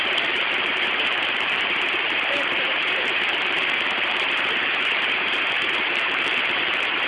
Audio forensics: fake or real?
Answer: fake